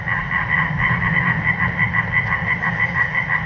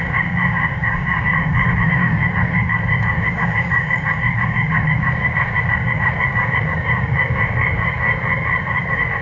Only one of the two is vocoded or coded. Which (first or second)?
second